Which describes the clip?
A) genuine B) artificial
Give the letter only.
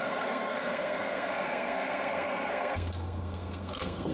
B